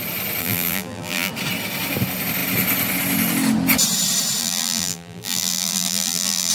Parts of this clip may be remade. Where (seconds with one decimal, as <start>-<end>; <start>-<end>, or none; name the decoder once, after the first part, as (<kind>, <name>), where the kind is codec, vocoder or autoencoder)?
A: 0.4-1.3 (vocoder, BigVGAN v2); 4.4-6.5